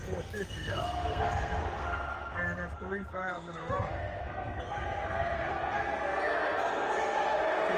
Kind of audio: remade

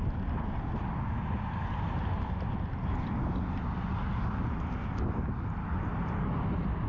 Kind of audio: recorded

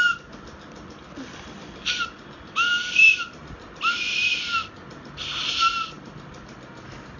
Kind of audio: recorded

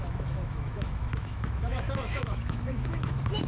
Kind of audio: remade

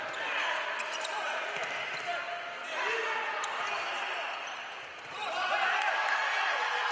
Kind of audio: recorded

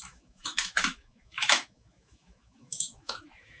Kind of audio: remade